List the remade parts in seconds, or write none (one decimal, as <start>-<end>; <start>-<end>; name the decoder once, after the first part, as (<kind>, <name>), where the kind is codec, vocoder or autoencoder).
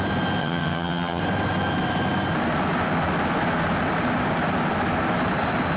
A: 0.4-1.2 (vocoder, HiFi-GAN)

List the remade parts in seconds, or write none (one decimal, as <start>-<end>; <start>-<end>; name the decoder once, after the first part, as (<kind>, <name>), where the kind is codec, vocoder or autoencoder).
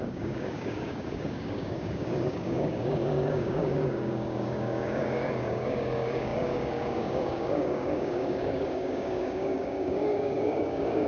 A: 0.0-11.1 (codec, DAC)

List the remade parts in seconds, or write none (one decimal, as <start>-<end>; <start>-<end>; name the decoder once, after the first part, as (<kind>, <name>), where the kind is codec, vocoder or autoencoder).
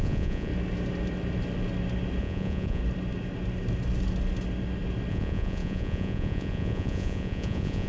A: 0.0-0.5 (vocoder, Vocos); 2.2-2.8; 5.1-7.9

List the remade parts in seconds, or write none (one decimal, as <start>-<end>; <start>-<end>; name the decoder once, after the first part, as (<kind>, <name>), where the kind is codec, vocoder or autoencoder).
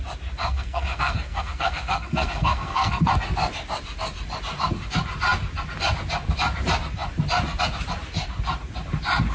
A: 0.4-3.1 (codec, SNAC)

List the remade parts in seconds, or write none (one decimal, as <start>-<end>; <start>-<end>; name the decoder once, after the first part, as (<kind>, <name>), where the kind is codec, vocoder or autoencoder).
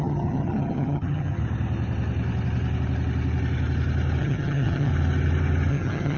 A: 0.0-1.4 (vocoder, HiFi-GAN); 4.2-4.9; 5.7-6.2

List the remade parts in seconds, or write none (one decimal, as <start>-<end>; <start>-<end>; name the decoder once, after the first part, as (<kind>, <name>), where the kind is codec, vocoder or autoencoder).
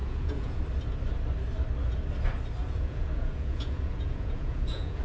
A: 0.0-0.6 (vocoder, Vocos); 2.6-5.0